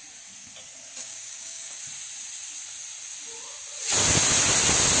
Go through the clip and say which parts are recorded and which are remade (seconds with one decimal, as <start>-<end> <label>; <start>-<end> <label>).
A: 0.0-1.0 recorded; 1.0-1.8 remade; 1.8-5.0 recorded